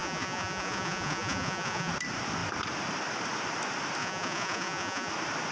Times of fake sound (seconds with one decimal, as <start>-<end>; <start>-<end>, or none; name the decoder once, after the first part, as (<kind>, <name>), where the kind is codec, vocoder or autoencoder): 0.0-1.9 (vocoder, Vocos); 4.0-5.1